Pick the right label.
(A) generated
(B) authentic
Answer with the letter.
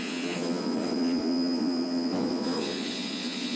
A